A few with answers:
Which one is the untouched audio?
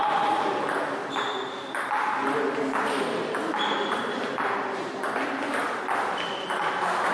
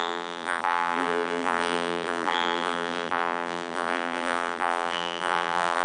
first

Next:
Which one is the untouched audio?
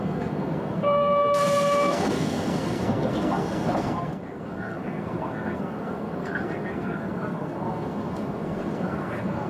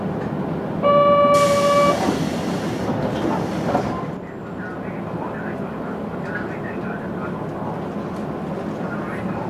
second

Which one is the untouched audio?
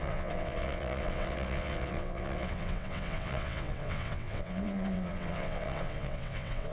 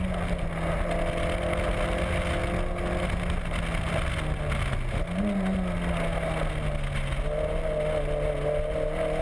second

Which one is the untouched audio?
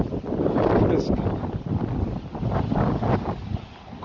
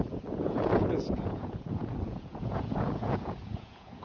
first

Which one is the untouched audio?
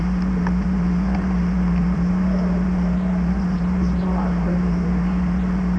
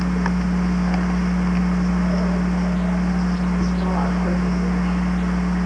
second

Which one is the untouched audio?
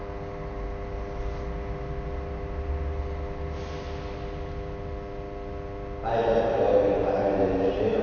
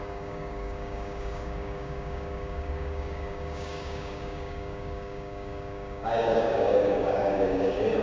first